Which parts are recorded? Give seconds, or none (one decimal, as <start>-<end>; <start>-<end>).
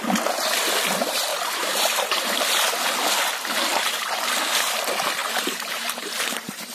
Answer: 0.0-1.3; 2.4-3.7; 4.2-5.2